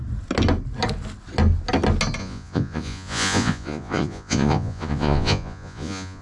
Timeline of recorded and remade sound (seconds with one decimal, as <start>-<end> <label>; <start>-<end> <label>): 0.0-2.2 recorded; 2.2-6.2 remade